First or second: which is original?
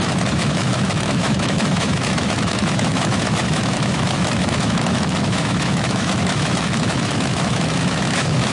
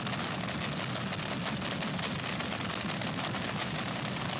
second